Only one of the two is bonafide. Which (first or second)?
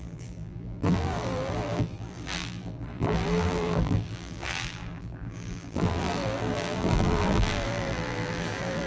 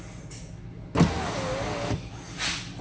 second